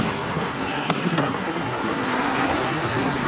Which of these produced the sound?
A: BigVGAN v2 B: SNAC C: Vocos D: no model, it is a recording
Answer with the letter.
B